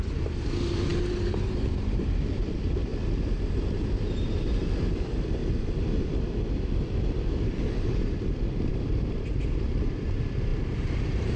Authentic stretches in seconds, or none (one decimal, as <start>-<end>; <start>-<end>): 5.4-8.7